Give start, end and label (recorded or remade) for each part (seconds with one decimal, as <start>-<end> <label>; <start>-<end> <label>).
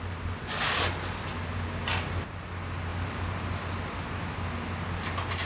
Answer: 0.0-5.5 recorded